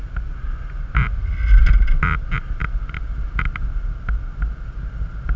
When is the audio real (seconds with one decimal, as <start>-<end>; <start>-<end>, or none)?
0.0-5.4